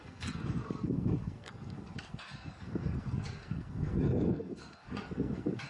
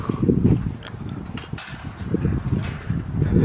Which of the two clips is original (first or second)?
second